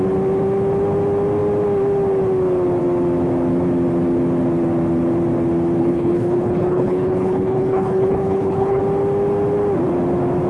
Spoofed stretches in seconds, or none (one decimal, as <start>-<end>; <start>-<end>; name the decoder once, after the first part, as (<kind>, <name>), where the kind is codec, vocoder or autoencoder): 5.8-8.8 (codec, HILCodec)